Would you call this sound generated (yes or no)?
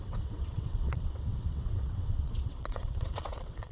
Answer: yes